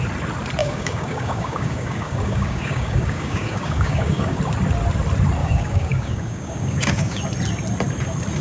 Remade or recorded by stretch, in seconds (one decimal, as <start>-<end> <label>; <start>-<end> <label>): 0.0-0.6 recorded; 0.6-4.4 remade; 4.4-5.4 recorded; 5.4-7.2 remade; 7.2-8.4 recorded